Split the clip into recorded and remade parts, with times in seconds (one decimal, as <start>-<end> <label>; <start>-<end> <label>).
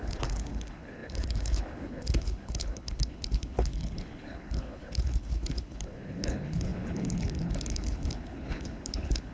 0.0-9.3 remade